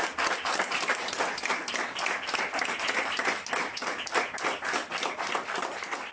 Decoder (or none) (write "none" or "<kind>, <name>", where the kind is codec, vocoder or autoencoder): none